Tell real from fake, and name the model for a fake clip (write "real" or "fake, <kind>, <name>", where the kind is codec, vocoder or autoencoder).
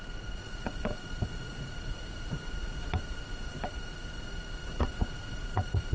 fake, vocoder, Vocos